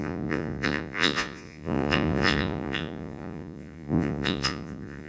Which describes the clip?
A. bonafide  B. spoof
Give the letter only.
B